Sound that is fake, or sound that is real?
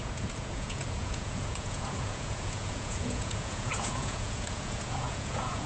fake